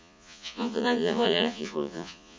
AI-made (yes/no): yes